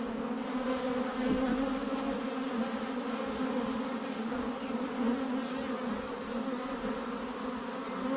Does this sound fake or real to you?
real